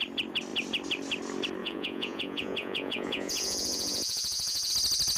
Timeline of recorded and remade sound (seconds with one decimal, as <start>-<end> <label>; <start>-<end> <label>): 0.0-1.6 recorded; 1.6-4.7 remade; 4.7-5.2 recorded